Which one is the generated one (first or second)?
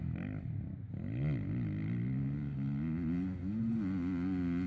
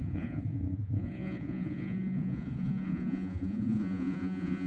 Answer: second